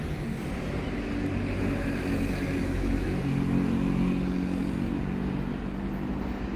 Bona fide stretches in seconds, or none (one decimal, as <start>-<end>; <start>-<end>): 0.0-2.6; 3.2-6.6